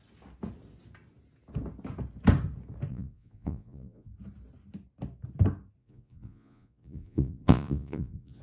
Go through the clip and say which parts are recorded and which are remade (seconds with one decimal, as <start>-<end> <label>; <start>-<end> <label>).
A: 0.0-2.9 recorded; 2.9-4.1 remade; 4.1-5.8 recorded; 5.8-8.4 remade